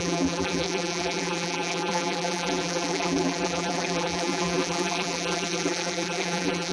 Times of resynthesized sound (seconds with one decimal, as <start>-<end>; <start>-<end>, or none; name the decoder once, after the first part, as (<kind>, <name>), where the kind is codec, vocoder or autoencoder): 0.0-6.7 (vocoder, BigVGAN v2)